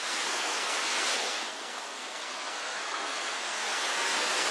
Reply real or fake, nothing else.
fake